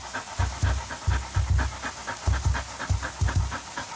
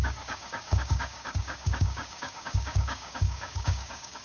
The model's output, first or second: second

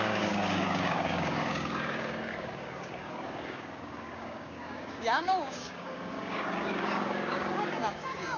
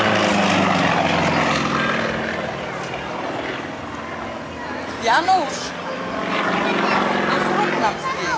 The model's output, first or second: first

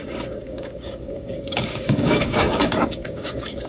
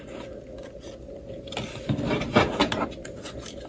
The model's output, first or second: first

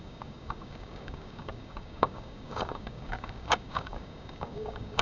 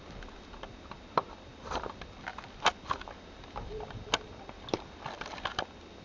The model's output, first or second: first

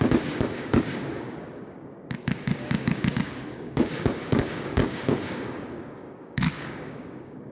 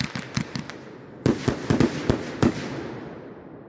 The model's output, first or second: first